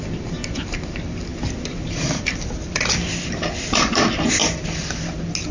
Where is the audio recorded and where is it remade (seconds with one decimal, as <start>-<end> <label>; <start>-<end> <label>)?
0.0-1.3 recorded; 1.3-4.4 remade; 4.4-5.5 recorded